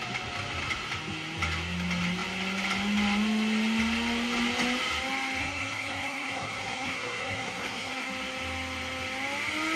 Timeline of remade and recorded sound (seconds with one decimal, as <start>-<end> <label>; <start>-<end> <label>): 0.0-5.4 recorded; 5.4-8.1 remade; 8.1-9.8 recorded